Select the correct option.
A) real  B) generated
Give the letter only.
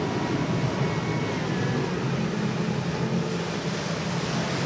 A